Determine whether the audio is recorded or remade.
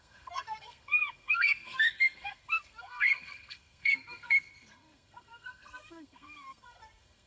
remade